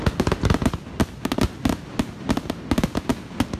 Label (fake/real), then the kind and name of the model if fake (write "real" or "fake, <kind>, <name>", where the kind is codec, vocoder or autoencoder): real